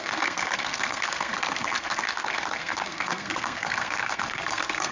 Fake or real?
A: fake